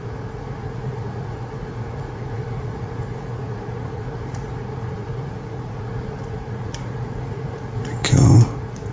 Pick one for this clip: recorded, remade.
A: remade